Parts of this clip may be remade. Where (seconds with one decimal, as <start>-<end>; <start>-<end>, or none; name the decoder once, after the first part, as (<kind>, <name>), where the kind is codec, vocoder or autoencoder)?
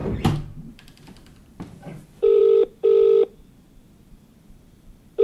0.7-2.4 (vocoder, BigVGAN v2); 4.0-5.2